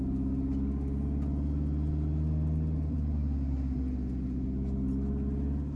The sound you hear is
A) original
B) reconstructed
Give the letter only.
A